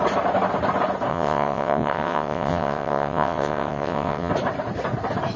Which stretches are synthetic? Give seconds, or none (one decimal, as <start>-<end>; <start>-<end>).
1.1-4.3

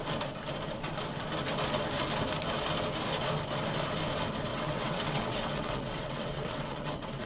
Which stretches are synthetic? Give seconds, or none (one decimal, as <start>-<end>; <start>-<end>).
4.5-7.3

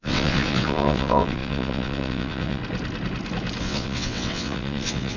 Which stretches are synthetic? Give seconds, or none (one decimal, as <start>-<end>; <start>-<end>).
0.0-2.6; 3.6-5.2

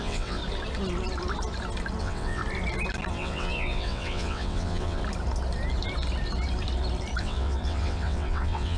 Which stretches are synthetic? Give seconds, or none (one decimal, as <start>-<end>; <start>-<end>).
0.0-0.4; 2.0-2.4; 3.1-5.0; 7.2-8.8